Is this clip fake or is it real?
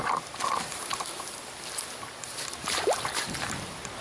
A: real